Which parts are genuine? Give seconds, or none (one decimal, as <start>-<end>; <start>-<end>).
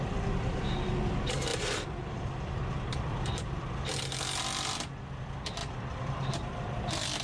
0.0-7.2